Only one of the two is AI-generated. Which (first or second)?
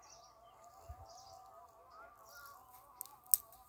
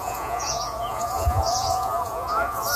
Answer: second